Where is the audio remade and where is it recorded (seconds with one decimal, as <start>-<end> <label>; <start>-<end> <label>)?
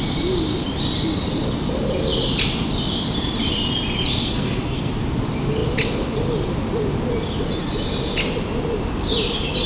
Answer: 0.0-4.2 recorded; 4.2-4.9 remade; 4.9-9.7 recorded